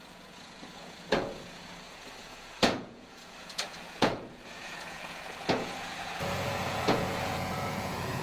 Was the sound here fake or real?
fake